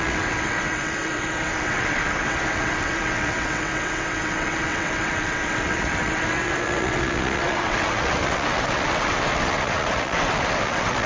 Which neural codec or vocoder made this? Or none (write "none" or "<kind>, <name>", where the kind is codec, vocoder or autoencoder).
vocoder, WaveNeXt